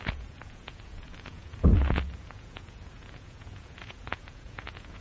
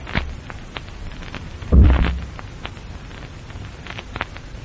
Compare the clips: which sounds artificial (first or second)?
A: first